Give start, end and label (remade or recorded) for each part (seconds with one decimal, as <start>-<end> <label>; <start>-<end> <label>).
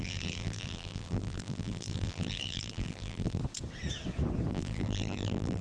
0.0-3.4 remade; 3.4-4.5 recorded; 4.5-5.6 remade